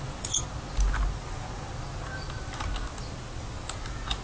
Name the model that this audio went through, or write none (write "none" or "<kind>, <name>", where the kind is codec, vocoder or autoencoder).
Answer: none